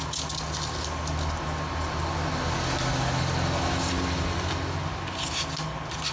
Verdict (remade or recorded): recorded